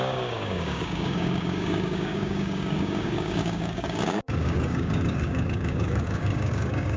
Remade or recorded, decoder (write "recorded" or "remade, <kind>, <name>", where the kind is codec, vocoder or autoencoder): remade, codec, DAC